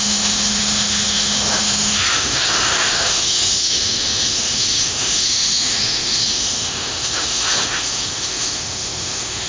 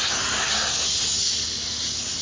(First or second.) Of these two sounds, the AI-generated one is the first